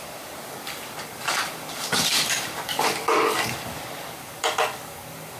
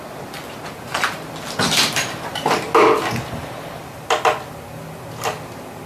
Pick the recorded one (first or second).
second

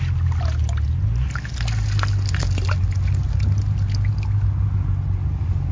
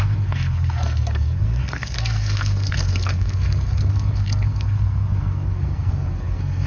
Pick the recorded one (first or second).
first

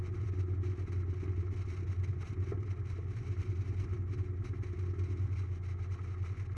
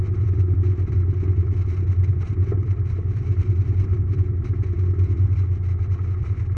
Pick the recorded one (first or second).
first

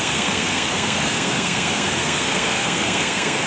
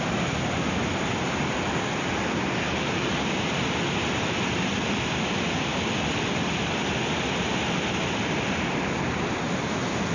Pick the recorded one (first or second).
second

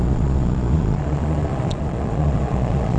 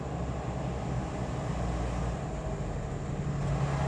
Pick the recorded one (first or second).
second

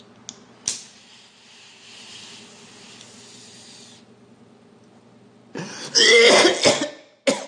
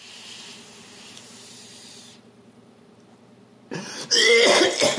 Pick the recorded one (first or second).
first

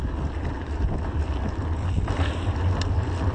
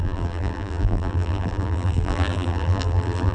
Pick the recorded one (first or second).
first